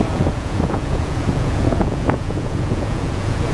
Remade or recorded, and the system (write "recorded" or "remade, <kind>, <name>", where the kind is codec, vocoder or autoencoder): remade, vocoder, Vocos